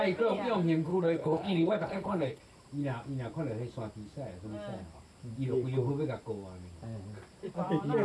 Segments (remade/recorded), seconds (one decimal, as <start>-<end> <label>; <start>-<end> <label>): 0.0-0.9 recorded; 0.9-2.4 remade; 2.4-8.0 recorded

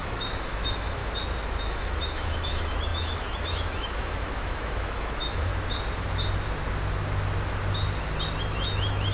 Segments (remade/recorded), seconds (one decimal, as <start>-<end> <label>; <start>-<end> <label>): 0.0-1.0 remade; 1.0-1.6 recorded; 1.6-5.5 remade; 5.5-8.4 recorded; 8.4-9.1 remade

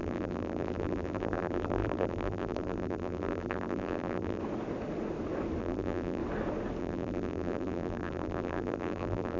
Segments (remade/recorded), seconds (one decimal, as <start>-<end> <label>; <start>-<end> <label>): 0.0-4.4 remade; 4.4-5.6 recorded; 5.6-6.2 remade; 6.2-6.8 recorded; 6.8-9.4 remade

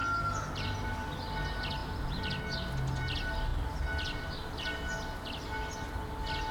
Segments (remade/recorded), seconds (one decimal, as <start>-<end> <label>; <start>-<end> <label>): 0.0-1.8 recorded; 1.8-2.4 remade; 2.4-6.5 recorded

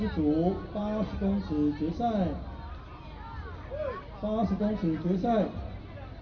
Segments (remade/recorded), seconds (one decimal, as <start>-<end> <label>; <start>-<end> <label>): 0.0-6.2 recorded

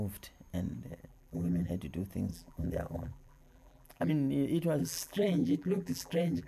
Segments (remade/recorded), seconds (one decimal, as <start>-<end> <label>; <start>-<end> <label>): 0.0-0.9 recorded; 0.9-1.7 remade; 1.7-2.3 recorded; 2.3-4.1 remade; 4.1-4.8 recorded; 4.8-6.5 remade